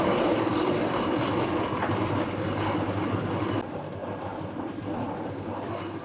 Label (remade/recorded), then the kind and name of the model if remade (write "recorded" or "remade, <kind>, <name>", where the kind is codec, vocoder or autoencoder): recorded